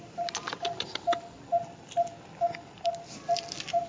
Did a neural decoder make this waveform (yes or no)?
no